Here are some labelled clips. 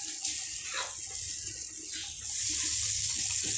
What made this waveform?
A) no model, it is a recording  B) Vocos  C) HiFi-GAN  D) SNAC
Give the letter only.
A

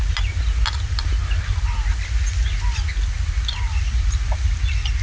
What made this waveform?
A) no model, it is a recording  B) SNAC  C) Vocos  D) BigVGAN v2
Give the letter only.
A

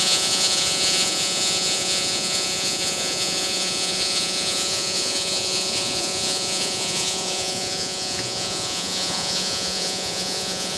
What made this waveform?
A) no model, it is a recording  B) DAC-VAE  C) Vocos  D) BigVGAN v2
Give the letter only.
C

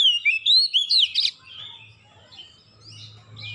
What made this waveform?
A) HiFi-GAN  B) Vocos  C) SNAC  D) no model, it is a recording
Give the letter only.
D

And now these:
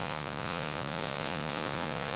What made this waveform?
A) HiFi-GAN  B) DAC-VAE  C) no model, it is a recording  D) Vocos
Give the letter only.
D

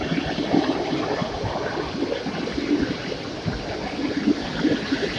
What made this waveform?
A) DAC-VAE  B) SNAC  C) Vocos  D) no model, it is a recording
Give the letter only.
D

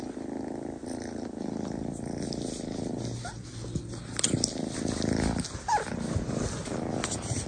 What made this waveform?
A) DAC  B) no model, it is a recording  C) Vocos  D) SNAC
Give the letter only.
B